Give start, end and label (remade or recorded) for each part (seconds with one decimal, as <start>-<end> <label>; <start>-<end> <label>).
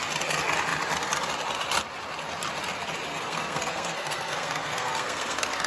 0.0-3.1 recorded; 3.1-5.7 remade